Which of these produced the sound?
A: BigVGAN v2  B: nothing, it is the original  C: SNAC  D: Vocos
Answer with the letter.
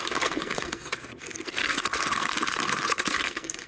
C